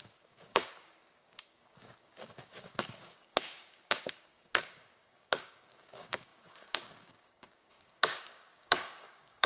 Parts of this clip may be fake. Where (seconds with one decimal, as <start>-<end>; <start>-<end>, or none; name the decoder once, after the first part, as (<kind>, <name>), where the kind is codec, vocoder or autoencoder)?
0.0-9.5 (codec, DAC)